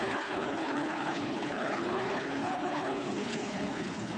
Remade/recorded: remade